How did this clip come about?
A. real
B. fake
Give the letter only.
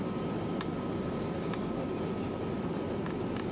A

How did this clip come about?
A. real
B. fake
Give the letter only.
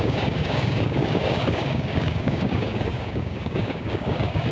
B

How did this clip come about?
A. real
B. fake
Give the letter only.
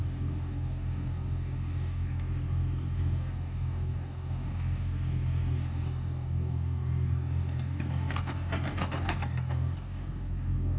B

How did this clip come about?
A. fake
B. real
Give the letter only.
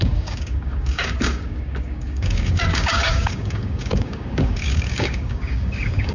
A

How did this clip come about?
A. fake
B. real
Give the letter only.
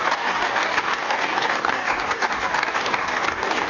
A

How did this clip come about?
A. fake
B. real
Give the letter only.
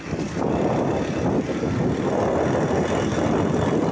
B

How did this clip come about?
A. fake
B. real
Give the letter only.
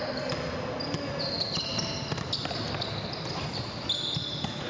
B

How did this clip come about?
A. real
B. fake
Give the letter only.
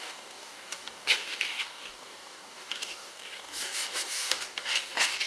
B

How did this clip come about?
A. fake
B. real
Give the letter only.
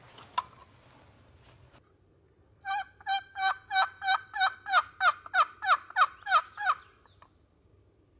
B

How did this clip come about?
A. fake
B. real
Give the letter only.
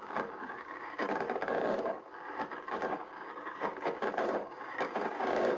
A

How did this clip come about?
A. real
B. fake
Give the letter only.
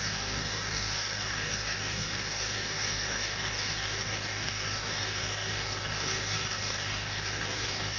B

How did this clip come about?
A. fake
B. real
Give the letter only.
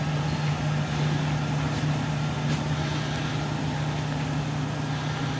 B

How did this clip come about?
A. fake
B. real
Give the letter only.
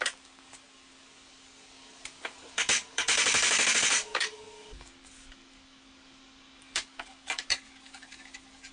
A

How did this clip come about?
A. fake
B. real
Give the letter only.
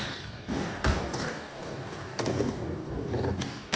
A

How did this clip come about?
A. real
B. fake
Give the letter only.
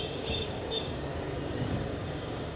B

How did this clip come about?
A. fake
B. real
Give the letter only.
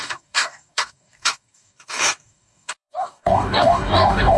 A